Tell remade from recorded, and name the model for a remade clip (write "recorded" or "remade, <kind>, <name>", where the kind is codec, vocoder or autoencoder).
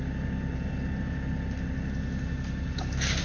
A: recorded